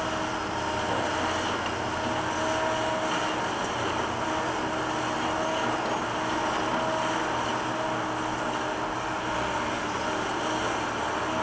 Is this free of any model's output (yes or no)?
yes